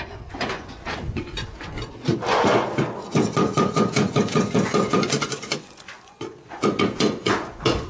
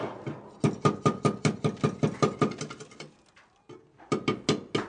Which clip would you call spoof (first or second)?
first